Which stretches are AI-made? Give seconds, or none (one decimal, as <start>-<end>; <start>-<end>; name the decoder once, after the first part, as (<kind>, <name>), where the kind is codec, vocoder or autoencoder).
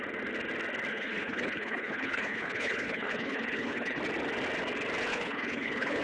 0.9-4.0 (codec, HILCodec); 5.1-6.0